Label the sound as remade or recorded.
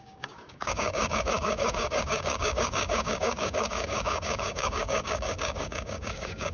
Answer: remade